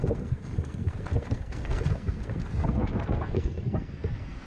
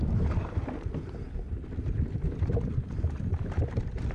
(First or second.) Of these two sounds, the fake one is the first